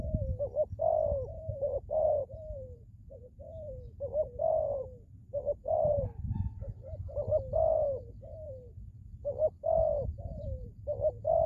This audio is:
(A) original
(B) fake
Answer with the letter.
B